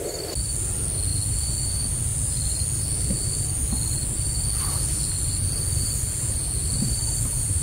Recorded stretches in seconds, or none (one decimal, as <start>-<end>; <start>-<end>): 0.0-7.6